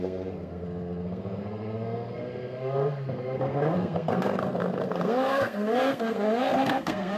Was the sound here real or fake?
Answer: fake